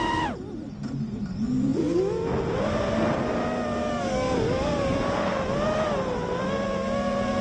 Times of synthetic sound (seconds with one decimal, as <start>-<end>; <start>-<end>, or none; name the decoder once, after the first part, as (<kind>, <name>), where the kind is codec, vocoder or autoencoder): 3.8-5.3 (codec, DAC)

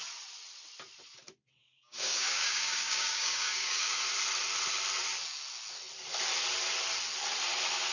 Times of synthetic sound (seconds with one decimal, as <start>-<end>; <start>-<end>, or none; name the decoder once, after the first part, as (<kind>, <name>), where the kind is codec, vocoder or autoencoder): 1.6-4.0 (codec, DAC)

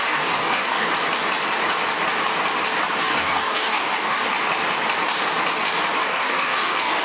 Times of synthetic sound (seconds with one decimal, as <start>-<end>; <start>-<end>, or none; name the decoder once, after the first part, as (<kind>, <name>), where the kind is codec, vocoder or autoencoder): 0.0-0.9 (codec, DAC); 3.0-4.3; 6.0-7.0

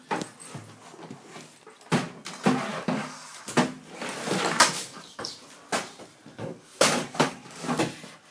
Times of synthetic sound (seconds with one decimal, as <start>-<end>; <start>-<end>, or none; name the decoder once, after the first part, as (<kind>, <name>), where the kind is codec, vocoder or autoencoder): 2.7-3.4 (codec, DAC); 4.8-5.3; 6.3-7.8

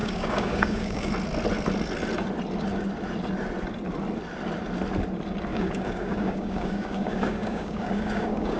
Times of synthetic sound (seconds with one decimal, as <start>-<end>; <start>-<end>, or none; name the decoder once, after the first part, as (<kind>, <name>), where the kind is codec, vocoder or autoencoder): 0.0-1.1 (codec, DAC); 5.5-8.6

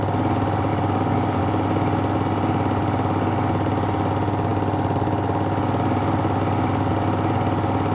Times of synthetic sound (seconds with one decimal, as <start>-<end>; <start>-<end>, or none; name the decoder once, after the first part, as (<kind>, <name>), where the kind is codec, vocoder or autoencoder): 0.7-1.4 (codec, DAC)

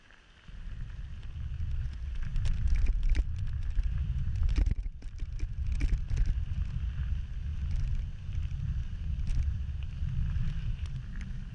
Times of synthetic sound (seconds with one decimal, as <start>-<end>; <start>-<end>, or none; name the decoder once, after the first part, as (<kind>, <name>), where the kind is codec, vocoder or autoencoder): none